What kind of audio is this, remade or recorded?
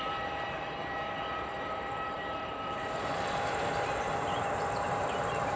remade